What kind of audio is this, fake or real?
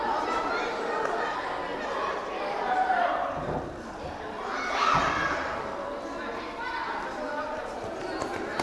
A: real